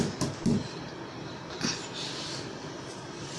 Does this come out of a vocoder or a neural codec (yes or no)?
no